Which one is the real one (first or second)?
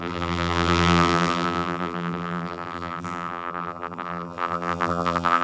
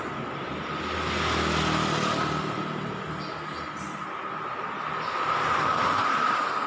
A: second